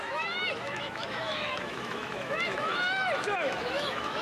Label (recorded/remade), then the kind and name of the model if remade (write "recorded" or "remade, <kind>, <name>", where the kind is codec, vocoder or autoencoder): remade, autoencoder, DAC-VAE